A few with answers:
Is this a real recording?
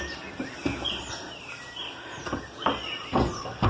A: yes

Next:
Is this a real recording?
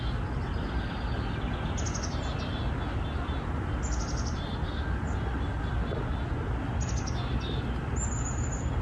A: yes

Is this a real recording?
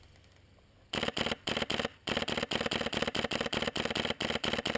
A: no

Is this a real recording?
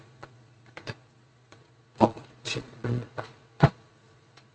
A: no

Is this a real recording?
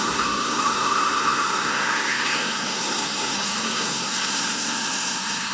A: no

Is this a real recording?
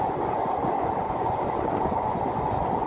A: no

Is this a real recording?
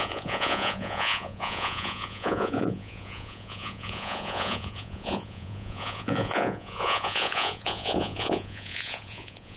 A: no